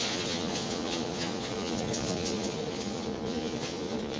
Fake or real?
fake